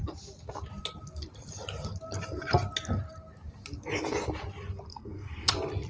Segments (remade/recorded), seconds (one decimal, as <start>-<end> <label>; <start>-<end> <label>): 0.0-4.9 recorded; 4.9-5.5 remade; 5.5-5.9 recorded